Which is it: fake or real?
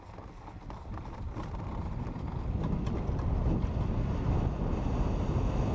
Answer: real